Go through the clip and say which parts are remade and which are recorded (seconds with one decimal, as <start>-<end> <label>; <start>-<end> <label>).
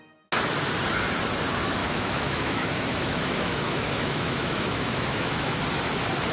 0.0-1.8 recorded; 1.8-5.6 remade; 5.6-6.3 recorded